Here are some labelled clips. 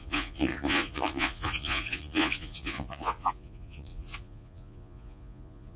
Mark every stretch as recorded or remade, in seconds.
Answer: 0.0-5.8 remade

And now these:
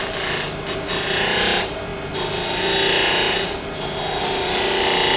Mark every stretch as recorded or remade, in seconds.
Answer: 0.0-5.2 recorded

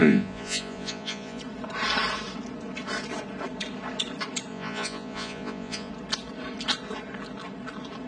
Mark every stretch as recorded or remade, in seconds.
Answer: 0.0-1.4 remade; 1.4-4.5 recorded; 4.5-5.9 remade; 5.9-8.1 recorded

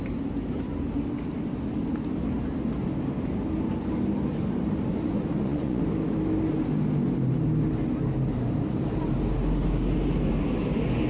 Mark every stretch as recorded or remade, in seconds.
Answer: 0.0-4.9 recorded; 4.9-5.8 remade; 5.8-11.1 recorded

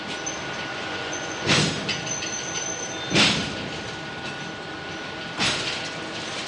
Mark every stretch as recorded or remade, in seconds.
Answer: 0.0-0.7 recorded; 0.7-1.6 remade; 1.6-6.5 recorded

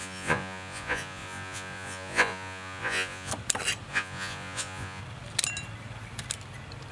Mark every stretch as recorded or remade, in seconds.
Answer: 0.0-3.3 remade; 3.3-3.9 recorded; 3.9-5.0 remade; 5.0-6.9 recorded

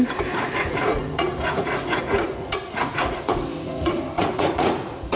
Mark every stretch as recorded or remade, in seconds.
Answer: 0.0-5.2 remade